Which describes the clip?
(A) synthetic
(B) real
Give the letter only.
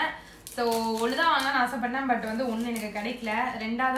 B